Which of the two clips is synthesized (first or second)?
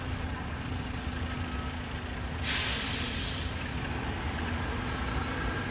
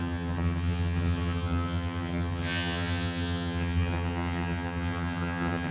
second